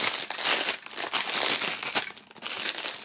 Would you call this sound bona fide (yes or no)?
yes